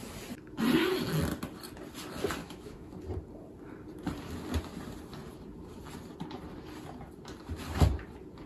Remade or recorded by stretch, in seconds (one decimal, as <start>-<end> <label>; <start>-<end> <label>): 0.0-2.4 recorded; 2.4-2.9 remade; 2.9-8.5 recorded